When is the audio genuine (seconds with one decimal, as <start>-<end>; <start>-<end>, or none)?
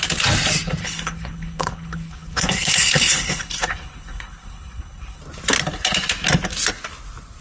0.0-0.8; 5.2-7.4